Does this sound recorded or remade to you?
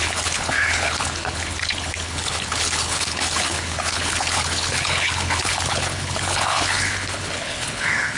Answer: remade